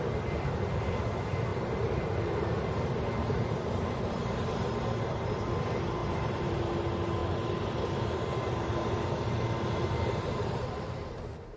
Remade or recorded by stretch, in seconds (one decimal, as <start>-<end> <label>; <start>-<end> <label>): 0.0-1.5 recorded; 1.5-4.3 remade; 4.3-6.0 recorded; 6.0-6.6 remade; 6.6-7.2 recorded; 7.2-11.2 remade; 11.2-11.6 recorded